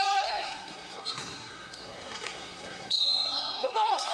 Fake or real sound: fake